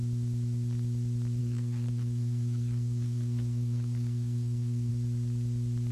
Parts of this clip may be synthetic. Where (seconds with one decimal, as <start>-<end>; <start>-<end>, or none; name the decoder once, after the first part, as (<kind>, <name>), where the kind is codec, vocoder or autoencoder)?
1.4-4.9 (codec, SNAC)